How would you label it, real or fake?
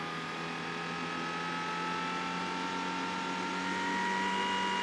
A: real